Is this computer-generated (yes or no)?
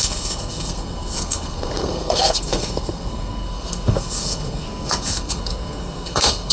yes